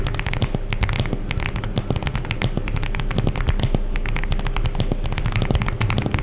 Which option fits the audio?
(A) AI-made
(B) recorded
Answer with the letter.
B